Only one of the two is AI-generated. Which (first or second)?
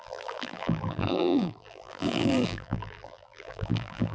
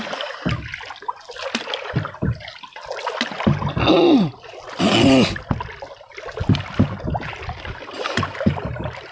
first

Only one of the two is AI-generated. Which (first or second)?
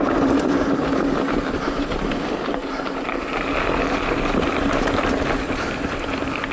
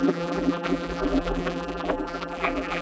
second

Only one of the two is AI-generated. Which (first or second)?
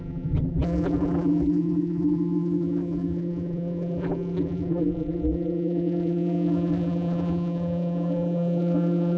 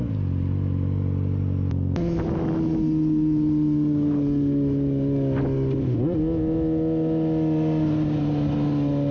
first